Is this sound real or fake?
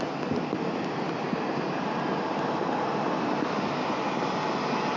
real